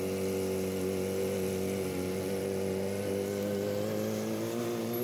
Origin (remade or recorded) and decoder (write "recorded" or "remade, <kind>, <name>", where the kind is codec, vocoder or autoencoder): recorded